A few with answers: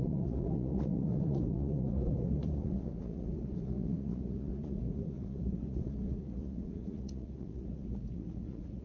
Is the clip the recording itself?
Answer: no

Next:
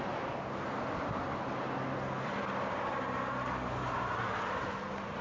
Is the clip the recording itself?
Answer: yes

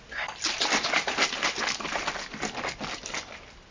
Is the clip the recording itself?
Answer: yes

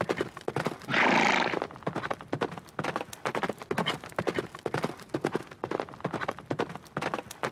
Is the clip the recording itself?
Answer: yes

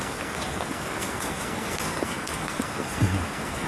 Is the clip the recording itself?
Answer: no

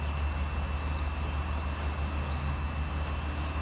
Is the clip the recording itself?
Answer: yes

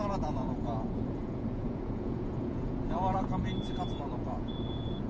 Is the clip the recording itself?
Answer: no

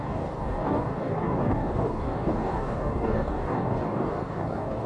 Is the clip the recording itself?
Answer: no